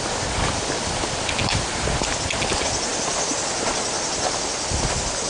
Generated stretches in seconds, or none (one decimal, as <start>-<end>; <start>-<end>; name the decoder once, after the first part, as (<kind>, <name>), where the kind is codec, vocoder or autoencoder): none